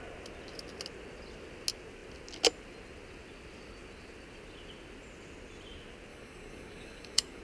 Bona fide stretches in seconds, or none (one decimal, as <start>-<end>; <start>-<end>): 0.0-6.1